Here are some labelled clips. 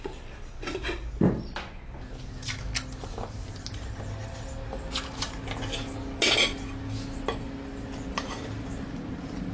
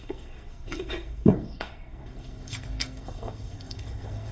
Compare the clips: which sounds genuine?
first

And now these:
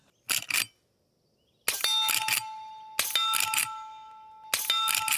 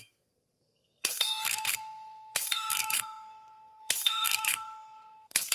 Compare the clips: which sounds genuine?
first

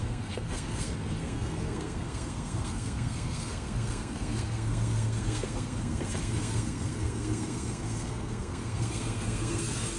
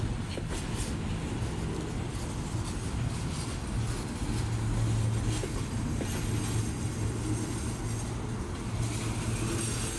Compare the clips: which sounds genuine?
second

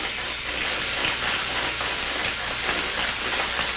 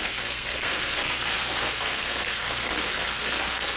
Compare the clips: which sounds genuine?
first